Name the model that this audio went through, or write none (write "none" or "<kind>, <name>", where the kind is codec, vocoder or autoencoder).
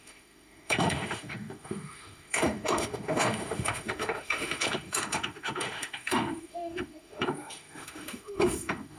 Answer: autoencoder, DAC-VAE